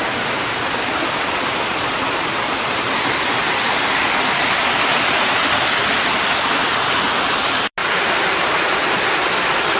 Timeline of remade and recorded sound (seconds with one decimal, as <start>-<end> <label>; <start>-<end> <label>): 0.0-7.8 recorded; 7.8-8.6 remade; 8.6-9.8 recorded